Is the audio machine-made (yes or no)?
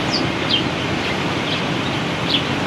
no